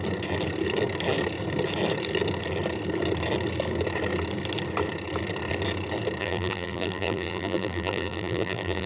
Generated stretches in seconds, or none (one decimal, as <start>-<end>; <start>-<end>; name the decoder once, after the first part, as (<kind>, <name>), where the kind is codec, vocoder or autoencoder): 6.2-8.9 (vocoder, BigVGAN v2)